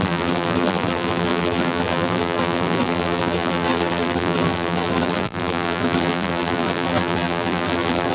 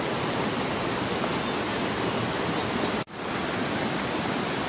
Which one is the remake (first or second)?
first